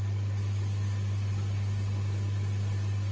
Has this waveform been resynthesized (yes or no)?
no